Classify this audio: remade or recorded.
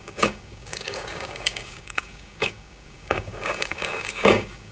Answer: remade